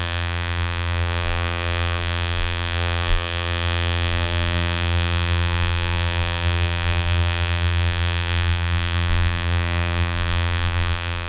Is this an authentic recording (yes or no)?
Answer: no